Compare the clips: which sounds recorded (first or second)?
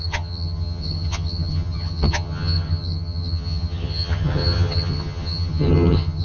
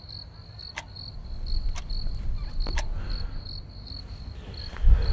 second